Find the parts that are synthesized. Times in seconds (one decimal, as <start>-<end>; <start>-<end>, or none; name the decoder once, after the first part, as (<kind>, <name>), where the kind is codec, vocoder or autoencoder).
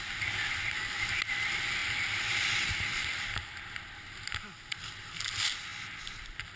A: none